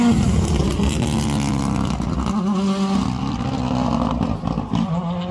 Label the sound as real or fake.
real